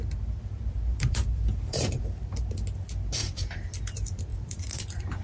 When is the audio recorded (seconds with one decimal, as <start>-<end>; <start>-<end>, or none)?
0.0-0.9; 1.9-3.2; 3.7-4.3; 4.8-5.2